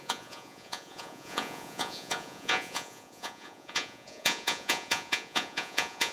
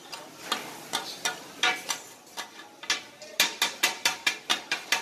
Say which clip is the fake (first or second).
first